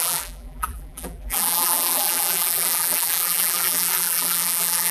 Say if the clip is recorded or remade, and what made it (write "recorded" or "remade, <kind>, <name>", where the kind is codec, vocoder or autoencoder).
remade, vocoder, BigVGAN v2